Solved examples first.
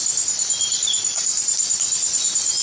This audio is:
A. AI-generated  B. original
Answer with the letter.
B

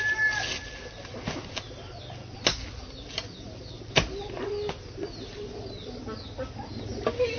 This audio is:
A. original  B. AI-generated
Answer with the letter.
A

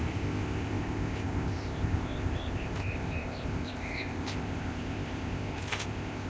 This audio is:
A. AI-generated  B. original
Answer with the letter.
A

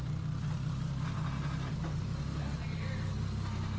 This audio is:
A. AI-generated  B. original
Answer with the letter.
B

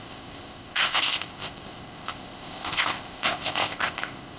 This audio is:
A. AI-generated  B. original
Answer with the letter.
A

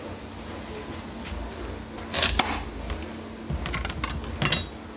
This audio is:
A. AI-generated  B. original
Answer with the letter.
B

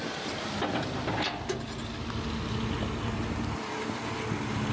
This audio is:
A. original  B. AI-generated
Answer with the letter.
A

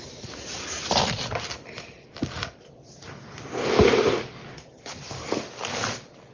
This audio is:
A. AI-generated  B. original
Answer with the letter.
B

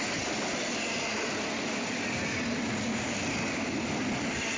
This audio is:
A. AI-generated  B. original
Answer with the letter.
B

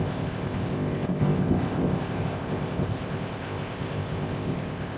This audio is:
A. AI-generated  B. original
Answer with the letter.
A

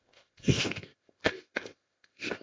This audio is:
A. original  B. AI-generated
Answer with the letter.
B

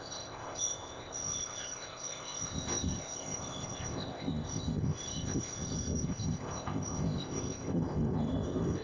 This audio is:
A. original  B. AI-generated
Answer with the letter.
B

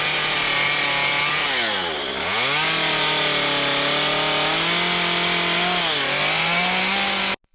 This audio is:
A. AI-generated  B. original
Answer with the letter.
B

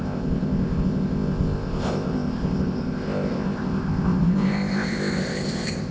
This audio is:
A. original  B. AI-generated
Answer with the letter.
B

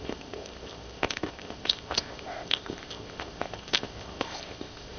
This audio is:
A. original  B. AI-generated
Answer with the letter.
B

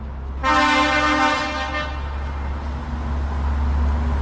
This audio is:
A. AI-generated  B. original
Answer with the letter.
B